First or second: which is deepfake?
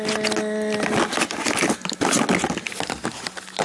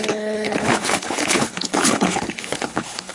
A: second